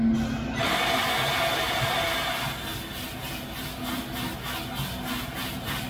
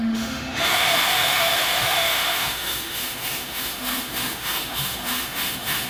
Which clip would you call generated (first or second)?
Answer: second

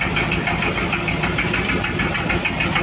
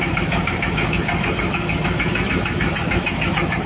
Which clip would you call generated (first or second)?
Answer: second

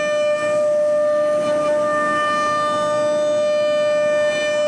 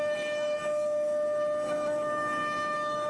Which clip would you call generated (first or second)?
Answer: second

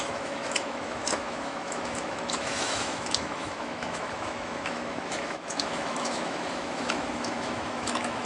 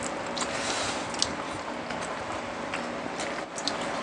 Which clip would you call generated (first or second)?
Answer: first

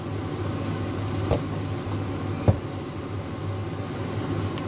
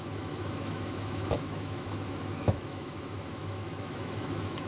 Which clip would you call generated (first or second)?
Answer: second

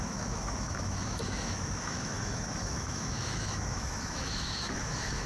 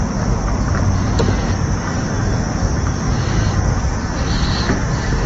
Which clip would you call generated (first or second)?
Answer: first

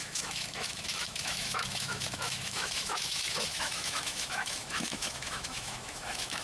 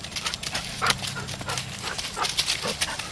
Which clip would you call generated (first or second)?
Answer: first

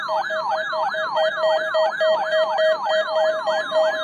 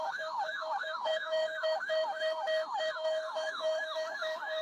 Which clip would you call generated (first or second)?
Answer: second